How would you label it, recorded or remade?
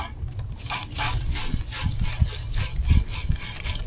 recorded